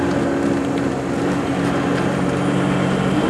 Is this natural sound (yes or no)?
yes